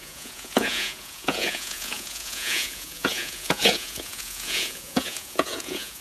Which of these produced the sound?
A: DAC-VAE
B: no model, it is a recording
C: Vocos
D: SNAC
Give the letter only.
C